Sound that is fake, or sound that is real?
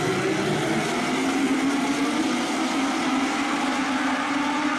real